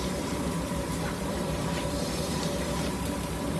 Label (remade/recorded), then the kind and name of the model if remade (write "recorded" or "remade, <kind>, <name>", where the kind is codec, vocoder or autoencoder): remade, vocoder, BigVGAN v2